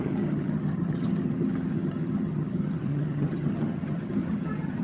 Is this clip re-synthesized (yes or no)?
yes